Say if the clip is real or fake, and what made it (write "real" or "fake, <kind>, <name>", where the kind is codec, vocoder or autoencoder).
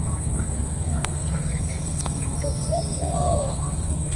fake, codec, SNAC